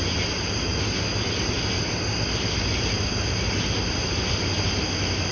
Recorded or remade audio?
recorded